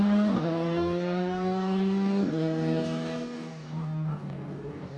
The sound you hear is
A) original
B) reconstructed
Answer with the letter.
B